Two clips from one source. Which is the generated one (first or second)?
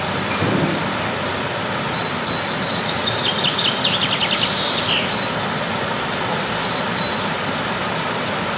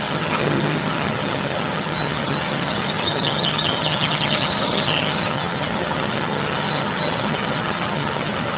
second